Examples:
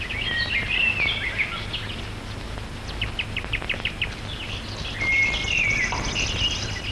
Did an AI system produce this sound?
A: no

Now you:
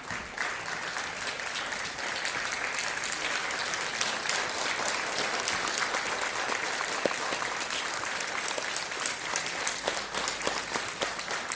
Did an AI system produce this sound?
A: no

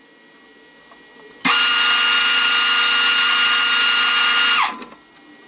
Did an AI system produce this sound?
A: no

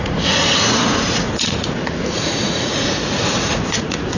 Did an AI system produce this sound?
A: yes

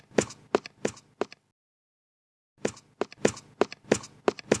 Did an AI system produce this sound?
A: no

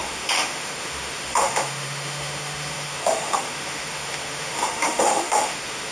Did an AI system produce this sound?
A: yes